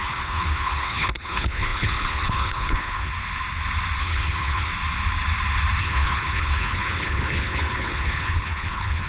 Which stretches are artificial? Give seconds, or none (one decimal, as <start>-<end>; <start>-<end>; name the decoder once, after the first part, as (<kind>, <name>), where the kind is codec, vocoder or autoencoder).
0.0-3.1 (codec, HILCodec); 4.0-4.7; 5.8-9.1